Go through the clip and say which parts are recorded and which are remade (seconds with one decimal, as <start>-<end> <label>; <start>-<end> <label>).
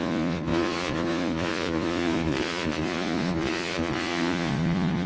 0.0-5.1 remade